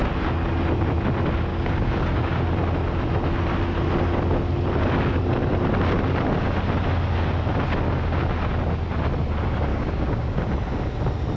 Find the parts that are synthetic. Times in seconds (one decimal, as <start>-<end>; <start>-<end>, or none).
1.5-2.4; 9.7-10.4